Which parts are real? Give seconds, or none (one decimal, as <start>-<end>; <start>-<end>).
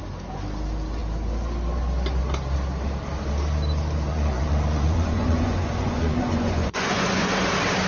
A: 0.0-4.1; 7.3-7.9